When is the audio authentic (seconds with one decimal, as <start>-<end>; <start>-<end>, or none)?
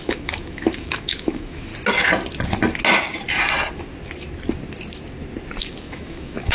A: 1.7-5.6